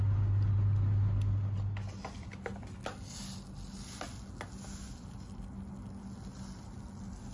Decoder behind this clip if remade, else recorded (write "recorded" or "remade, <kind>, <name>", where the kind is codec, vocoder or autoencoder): recorded